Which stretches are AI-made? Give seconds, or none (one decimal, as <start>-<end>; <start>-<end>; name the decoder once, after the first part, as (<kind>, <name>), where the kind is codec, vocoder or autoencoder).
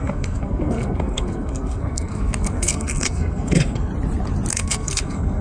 0.0-3.9 (codec, SNAC); 4.5-5.4